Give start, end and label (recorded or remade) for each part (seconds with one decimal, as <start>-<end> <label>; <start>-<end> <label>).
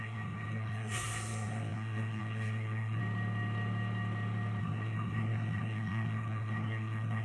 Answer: 0.0-3.0 remade; 3.0-4.6 recorded; 4.6-7.2 remade